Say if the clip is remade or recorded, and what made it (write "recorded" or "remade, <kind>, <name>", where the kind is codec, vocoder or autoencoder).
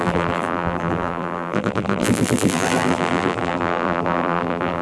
remade, vocoder, BigVGAN v2